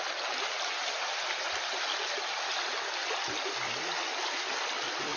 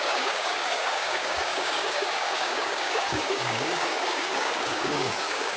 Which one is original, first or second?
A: first